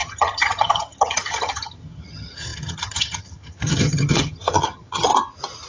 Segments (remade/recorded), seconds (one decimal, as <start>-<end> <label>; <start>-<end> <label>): 0.0-5.1 remade; 5.1-5.7 recorded